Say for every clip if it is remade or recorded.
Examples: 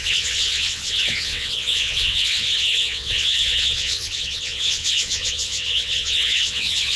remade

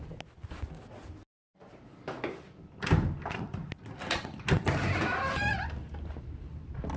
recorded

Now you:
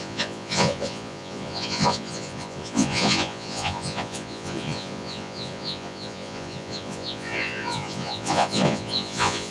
remade